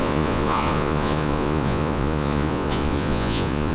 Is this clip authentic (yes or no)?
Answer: no